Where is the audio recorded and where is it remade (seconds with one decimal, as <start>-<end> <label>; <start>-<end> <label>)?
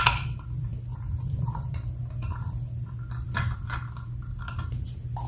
0.0-5.3 recorded